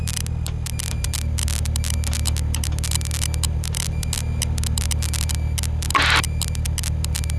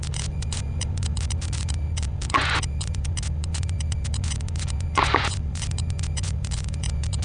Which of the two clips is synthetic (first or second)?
second